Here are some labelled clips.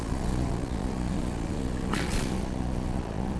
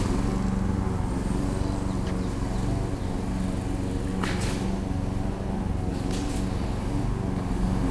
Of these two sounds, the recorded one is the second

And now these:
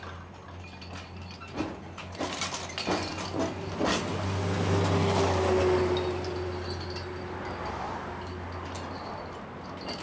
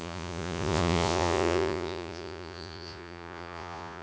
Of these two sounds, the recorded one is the first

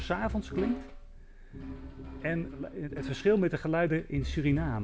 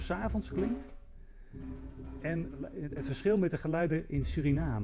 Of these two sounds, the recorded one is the first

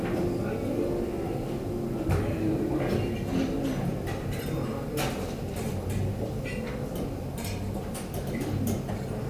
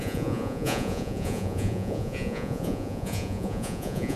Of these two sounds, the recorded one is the first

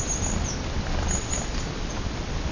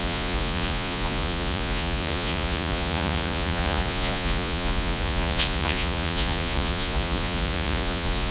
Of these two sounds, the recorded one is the first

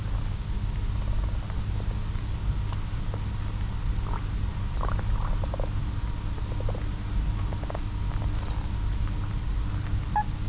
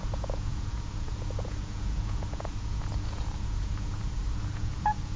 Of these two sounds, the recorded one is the first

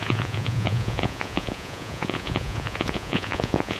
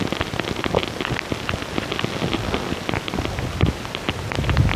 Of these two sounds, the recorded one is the second